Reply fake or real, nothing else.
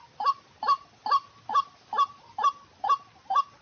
real